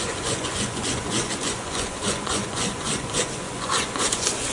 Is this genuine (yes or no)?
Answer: no